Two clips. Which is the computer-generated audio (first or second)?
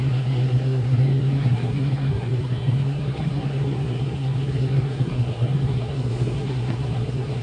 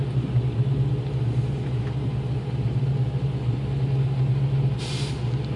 first